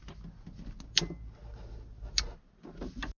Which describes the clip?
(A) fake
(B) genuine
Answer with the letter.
B